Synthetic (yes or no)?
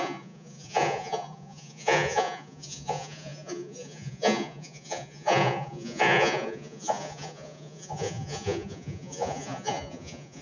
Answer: yes